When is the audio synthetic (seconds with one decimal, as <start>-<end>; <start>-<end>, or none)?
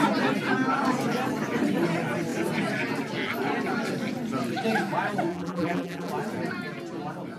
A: 5.3-6.1